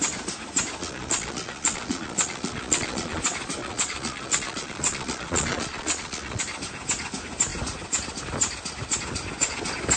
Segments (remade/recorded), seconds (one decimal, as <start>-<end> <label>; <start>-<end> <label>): 0.0-0.8 recorded; 0.8-3.2 remade; 3.2-3.6 recorded; 3.6-6.4 remade; 6.4-10.0 recorded